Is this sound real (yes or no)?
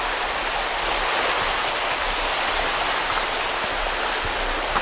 yes